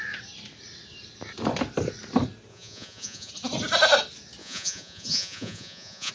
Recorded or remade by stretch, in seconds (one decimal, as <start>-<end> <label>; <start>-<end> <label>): 0.0-2.5 recorded; 2.5-3.3 remade; 3.3-4.4 recorded; 4.4-6.1 remade